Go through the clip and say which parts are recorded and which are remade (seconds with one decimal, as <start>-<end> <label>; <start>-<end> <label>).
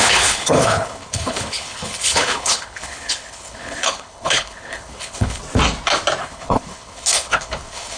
0.0-5.4 remade; 5.4-6.2 recorded; 6.2-8.0 remade